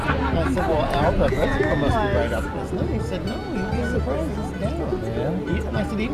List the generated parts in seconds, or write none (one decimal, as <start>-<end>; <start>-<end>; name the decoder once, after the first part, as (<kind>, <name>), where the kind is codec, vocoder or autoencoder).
0.7-1.9 (vocoder, Vocos)